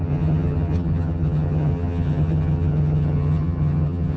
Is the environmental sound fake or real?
fake